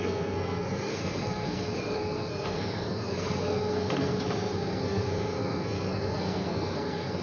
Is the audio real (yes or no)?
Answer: no